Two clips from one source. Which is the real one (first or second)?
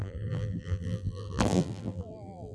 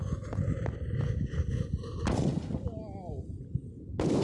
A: second